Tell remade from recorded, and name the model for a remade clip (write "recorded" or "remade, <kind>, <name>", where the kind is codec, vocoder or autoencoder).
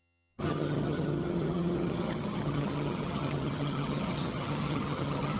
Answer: remade, vocoder, HiFi-GAN